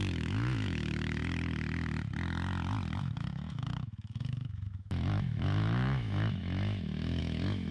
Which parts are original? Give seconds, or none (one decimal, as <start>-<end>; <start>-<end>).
1.2-3.0